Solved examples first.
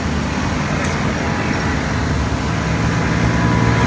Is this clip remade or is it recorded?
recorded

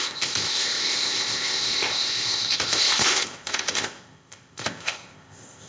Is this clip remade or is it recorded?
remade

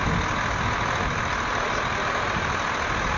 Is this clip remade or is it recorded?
recorded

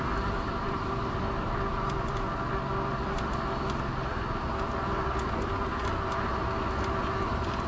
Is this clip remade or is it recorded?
recorded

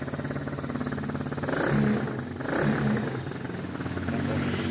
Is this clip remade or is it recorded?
recorded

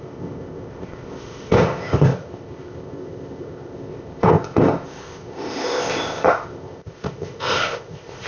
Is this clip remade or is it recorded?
remade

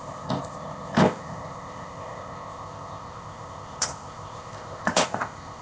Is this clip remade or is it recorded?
remade